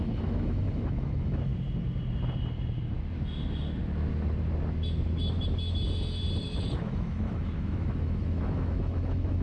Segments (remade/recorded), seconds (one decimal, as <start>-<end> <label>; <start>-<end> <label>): 0.0-1.5 remade; 1.5-6.4 recorded; 6.4-9.4 remade